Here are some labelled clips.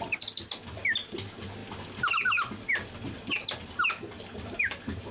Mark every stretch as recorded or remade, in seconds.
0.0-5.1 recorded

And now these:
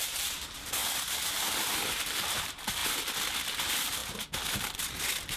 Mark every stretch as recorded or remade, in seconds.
0.0-0.8 remade; 0.8-1.7 recorded; 1.7-2.8 remade; 2.8-3.6 recorded; 3.6-4.0 remade; 4.0-5.4 recorded

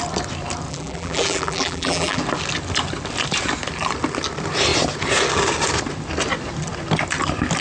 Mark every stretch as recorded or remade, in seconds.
0.0-0.7 recorded; 0.7-2.2 remade; 2.2-7.6 recorded

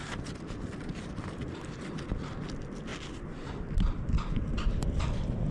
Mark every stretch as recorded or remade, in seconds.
0.0-2.9 remade; 2.9-5.5 recorded